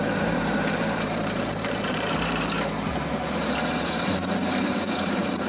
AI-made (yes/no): yes